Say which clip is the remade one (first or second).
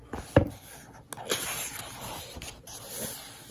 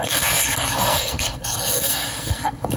second